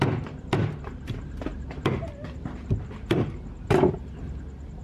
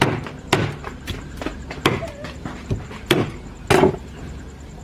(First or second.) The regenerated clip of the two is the first